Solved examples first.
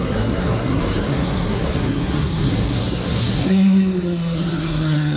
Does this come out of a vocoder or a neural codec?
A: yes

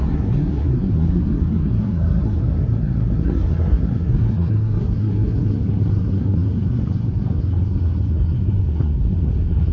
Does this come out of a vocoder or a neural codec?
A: yes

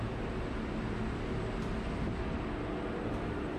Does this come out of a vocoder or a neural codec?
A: no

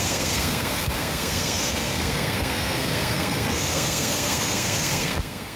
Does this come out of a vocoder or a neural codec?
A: yes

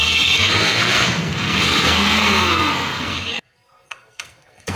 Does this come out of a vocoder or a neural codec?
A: yes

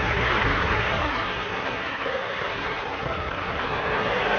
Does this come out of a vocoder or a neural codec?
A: yes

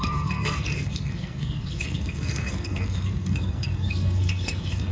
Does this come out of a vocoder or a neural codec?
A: yes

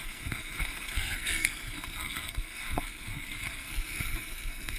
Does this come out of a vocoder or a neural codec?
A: yes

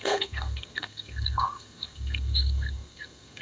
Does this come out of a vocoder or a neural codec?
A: yes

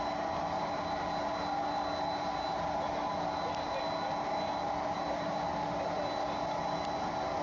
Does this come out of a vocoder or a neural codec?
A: no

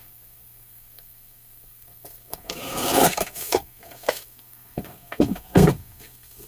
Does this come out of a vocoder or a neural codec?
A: yes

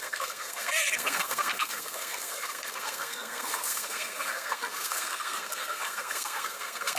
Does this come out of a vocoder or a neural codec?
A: yes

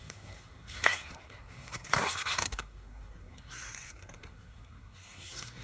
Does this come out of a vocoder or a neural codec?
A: yes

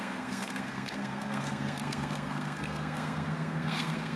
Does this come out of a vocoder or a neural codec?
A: yes